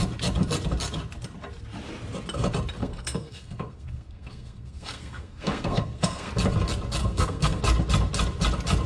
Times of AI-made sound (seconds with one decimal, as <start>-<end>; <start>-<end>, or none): 2.8-6.3; 7.0-7.6